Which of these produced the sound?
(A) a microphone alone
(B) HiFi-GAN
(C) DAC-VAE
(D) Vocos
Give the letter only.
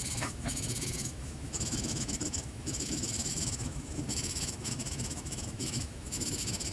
C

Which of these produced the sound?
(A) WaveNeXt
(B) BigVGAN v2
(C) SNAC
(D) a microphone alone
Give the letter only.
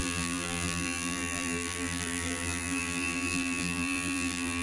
B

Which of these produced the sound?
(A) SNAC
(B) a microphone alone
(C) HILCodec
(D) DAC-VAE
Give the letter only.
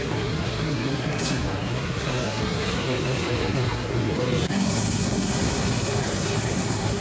A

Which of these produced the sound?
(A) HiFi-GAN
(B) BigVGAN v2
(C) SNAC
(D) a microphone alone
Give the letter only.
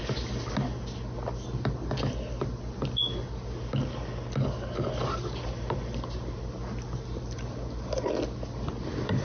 D